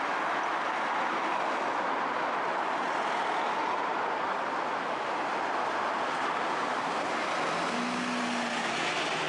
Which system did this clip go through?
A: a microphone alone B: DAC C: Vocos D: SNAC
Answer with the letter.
A